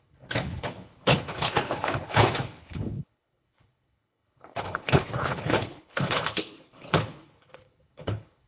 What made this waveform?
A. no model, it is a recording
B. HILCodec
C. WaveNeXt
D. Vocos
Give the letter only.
B